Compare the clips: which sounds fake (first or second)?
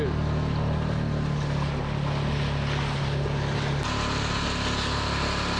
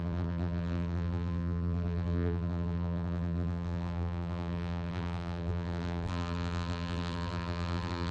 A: second